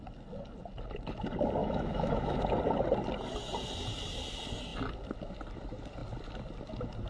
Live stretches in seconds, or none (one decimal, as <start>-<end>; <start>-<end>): 0.0-1.6; 2.4-7.1